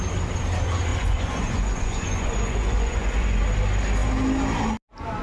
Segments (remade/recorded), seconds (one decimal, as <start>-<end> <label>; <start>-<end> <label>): 0.0-0.9 recorded; 0.9-3.4 remade; 3.4-5.2 recorded